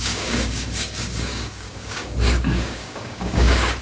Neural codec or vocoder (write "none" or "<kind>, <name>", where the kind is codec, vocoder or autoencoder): codec, DAC